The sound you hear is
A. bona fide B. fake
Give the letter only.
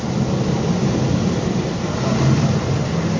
A